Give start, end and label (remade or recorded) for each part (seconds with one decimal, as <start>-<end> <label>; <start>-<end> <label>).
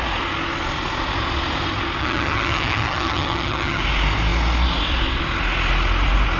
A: 0.0-2.0 recorded; 2.0-3.8 remade; 3.8-6.4 recorded